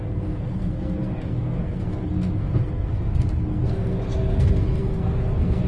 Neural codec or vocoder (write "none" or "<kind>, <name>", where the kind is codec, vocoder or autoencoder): codec, SNAC